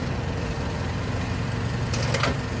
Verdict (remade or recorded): recorded